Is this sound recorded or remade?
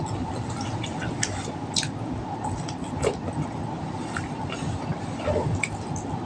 recorded